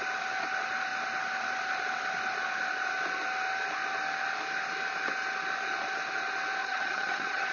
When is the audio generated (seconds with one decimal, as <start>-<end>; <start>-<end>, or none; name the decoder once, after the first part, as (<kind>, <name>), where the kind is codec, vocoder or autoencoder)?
6.6-7.5 (vocoder, HiFi-GAN)